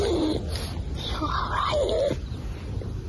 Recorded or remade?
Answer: recorded